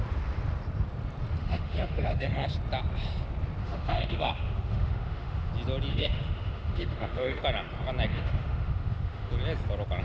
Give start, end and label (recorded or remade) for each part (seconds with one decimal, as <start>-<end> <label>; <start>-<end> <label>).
0.0-1.4 recorded; 1.4-2.5 remade; 2.5-3.6 recorded; 3.6-5.5 remade; 5.5-5.9 recorded; 5.9-7.4 remade; 7.4-8.1 recorded; 8.1-9.3 remade; 9.3-10.0 recorded